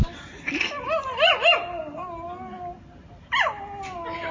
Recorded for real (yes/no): yes